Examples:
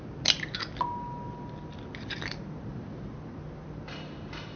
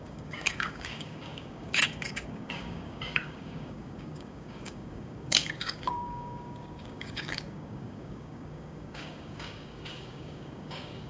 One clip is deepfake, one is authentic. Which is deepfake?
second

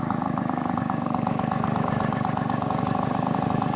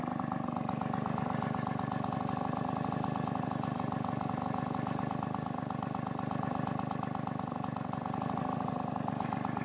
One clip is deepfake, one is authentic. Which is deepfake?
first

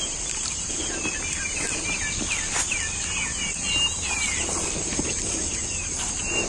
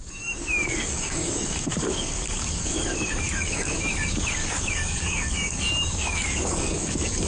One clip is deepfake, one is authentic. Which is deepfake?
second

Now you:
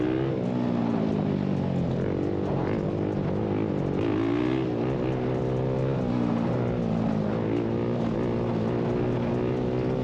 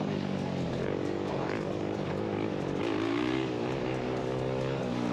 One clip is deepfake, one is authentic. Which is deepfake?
second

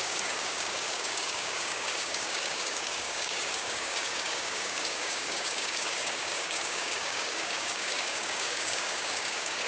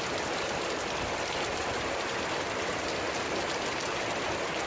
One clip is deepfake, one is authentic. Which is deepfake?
first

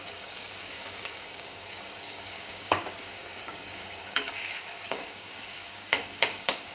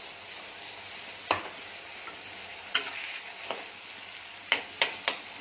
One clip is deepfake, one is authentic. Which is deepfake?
first